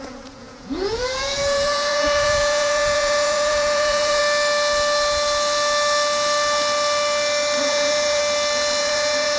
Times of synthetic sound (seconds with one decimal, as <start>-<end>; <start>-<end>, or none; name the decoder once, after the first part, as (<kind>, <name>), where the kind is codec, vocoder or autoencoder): 0.0-4.2 (vocoder, Vocos); 7.6-8.2; 8.8-9.4